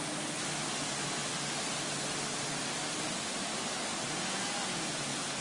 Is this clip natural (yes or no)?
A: yes